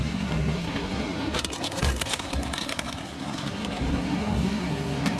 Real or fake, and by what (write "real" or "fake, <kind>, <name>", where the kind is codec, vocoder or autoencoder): fake, codec, SNAC